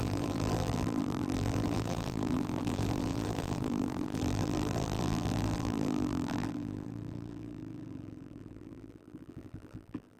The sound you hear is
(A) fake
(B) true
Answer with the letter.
A